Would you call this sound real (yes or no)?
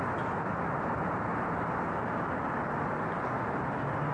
yes